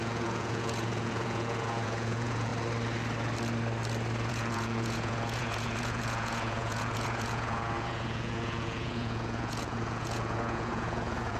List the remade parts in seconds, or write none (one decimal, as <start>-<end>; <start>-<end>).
0.0-2.5; 4.3-11.4